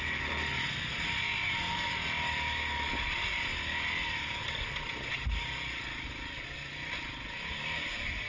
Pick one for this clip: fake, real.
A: real